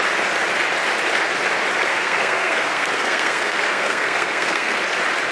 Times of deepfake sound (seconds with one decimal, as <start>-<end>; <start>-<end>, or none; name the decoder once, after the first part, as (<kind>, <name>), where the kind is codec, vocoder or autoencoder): 1.9-4.8 (codec, SNAC)